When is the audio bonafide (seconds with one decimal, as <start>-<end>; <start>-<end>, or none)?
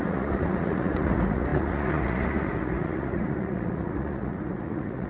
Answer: none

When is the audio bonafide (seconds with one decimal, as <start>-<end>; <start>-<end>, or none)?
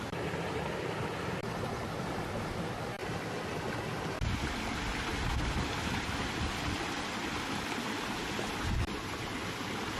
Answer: 0.0-10.0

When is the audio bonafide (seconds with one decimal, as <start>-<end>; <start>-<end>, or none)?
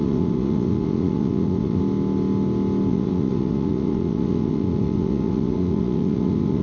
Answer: 1.8-2.9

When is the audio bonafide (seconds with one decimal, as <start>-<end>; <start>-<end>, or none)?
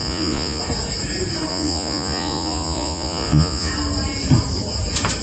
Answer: 0.6-1.5; 3.7-5.2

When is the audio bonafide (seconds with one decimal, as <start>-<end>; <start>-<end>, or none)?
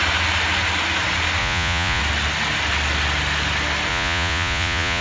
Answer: 0.0-1.4; 2.0-3.9